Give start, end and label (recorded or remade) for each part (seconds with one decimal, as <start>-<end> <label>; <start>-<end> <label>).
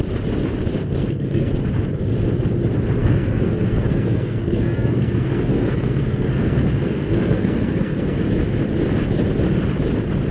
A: 0.0-0.8 recorded; 0.8-1.5 remade; 1.5-3.0 recorded; 3.0-8.2 remade; 8.2-10.3 recorded